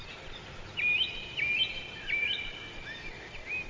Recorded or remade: recorded